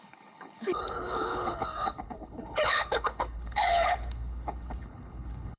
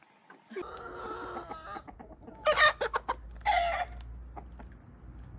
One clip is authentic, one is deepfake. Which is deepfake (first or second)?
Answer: first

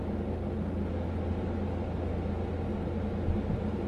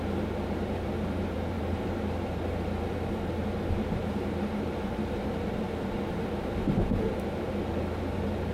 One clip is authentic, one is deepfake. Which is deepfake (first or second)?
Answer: second